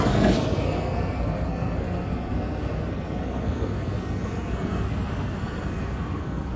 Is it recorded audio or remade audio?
remade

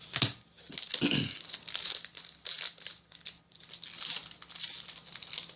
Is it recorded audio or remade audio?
recorded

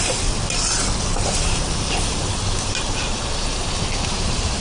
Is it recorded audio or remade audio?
recorded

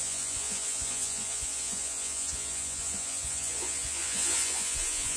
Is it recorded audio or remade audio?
remade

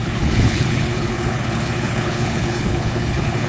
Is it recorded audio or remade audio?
remade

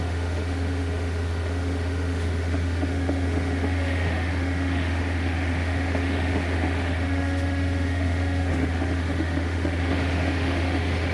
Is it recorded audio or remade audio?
remade